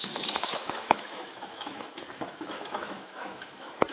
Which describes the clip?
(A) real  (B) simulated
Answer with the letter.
B